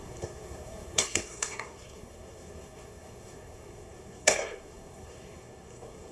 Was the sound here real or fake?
fake